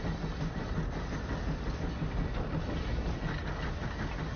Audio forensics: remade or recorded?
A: recorded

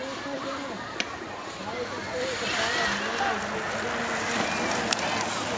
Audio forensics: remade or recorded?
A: recorded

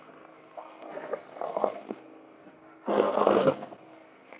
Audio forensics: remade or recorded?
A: remade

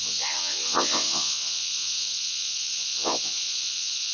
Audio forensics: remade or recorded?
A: remade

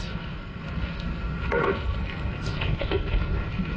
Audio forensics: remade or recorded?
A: remade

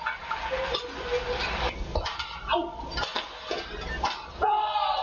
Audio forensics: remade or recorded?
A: recorded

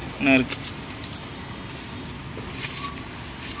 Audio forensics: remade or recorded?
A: recorded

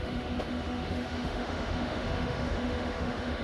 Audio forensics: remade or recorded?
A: remade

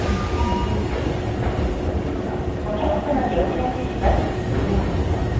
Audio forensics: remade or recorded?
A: recorded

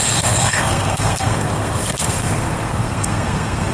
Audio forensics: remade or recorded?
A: remade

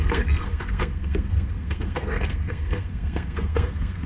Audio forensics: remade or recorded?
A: remade